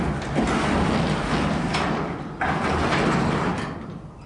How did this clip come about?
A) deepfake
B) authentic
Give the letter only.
B